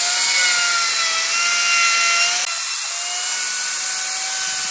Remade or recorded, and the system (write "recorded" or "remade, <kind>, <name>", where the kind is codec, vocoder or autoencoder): recorded